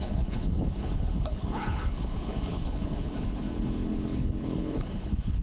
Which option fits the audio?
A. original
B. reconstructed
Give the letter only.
B